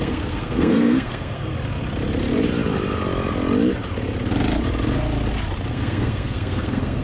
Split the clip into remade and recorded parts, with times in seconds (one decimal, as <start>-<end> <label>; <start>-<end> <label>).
0.0-1.5 remade; 1.5-5.7 recorded; 5.7-7.0 remade